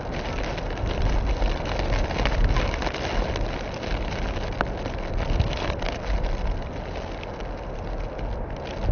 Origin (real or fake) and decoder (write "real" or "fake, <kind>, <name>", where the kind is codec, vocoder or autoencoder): real